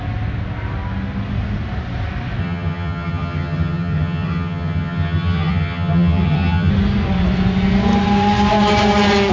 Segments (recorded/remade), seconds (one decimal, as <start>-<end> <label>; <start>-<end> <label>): 0.0-2.4 recorded; 2.4-6.7 remade; 6.7-9.3 recorded